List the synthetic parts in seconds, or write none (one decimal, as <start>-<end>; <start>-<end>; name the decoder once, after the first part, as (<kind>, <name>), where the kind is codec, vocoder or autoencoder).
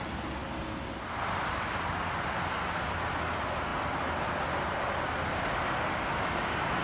none